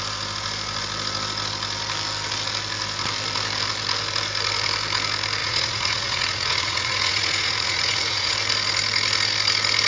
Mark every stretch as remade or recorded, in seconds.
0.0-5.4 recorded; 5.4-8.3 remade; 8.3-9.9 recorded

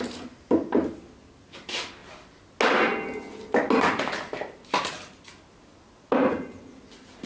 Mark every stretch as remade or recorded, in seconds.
0.0-7.3 recorded

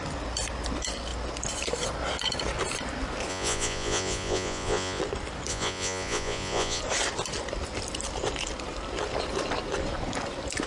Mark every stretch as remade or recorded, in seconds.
0.0-3.3 recorded; 3.3-5.0 remade; 5.0-5.5 recorded; 5.5-6.8 remade; 6.8-10.7 recorded